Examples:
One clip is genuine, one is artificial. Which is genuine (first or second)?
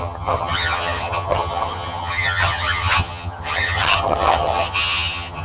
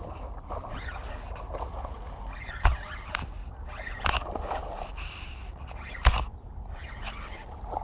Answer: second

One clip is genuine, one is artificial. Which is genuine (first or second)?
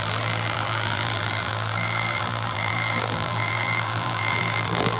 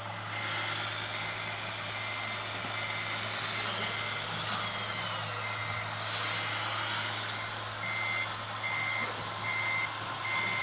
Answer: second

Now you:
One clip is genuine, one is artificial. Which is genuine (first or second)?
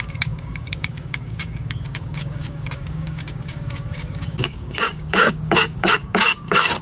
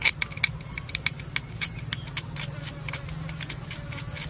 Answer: second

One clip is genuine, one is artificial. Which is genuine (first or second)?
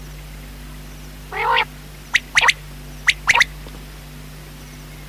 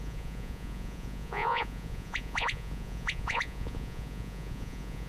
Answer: first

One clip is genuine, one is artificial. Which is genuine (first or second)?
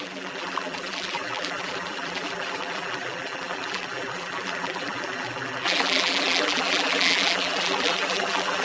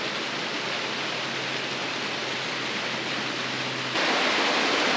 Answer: second